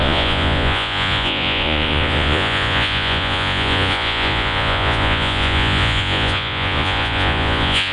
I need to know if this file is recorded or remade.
remade